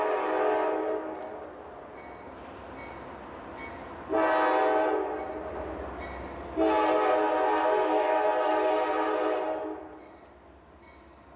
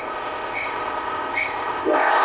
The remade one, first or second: second